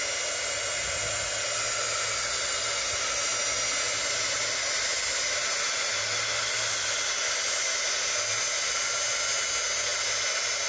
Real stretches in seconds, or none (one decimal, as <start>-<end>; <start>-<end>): 0.0-10.7